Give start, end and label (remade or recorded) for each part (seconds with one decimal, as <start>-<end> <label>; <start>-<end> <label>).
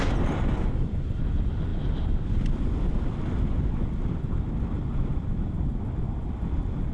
0.0-6.9 recorded